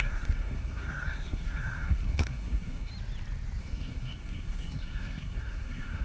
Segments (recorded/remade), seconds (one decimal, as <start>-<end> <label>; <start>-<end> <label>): 0.0-2.9 remade; 2.9-3.6 recorded; 3.6-6.0 remade